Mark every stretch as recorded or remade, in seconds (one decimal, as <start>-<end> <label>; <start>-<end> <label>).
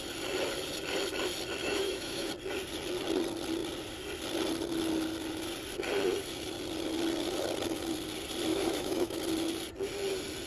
0.0-1.6 recorded; 1.6-2.3 remade; 2.3-8.5 recorded; 8.5-9.2 remade; 9.2-10.5 recorded